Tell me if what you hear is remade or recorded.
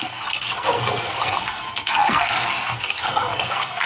remade